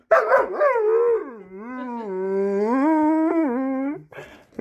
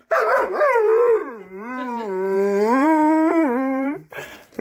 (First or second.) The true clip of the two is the first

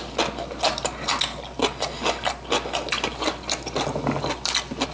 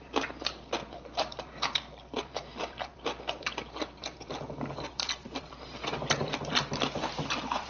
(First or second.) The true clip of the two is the first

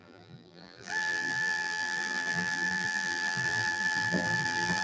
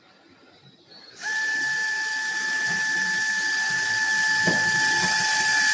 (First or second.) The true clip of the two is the second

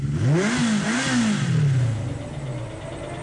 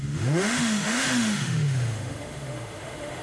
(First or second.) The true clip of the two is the first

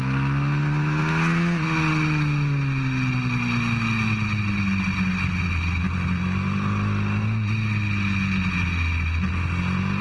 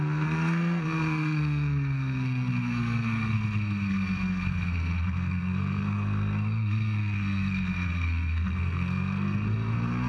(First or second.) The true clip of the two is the first